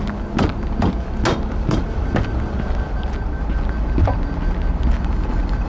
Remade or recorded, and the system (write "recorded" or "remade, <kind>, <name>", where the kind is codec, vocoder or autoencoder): recorded